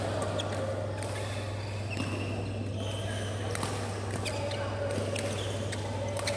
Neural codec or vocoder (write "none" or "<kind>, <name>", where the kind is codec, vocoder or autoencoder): none